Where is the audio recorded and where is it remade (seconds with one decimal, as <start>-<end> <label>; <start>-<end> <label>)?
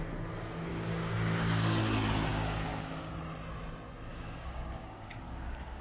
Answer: 0.0-0.7 recorded; 0.7-1.8 remade; 1.8-2.3 recorded; 2.3-3.1 remade; 3.1-4.1 recorded; 4.1-5.8 remade